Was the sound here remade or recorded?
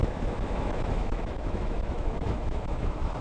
remade